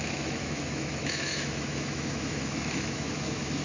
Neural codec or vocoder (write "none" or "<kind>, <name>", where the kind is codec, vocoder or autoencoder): autoencoder, DAC-VAE